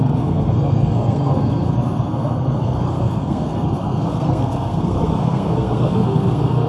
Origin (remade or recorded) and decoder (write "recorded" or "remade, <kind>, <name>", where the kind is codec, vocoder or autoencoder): remade, codec, SNAC